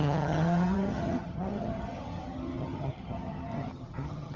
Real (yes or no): no